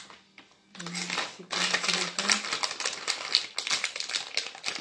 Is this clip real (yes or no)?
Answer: yes